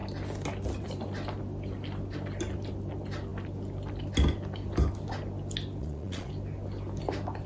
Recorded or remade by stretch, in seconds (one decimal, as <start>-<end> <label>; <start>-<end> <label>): 0.0-5.8 recorded; 5.8-6.3 remade; 6.3-7.5 recorded